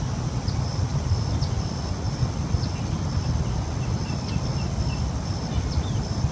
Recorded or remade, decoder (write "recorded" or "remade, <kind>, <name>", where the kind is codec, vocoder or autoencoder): recorded